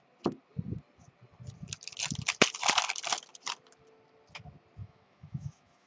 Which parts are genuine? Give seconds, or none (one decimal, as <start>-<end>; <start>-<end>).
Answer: 0.0-4.8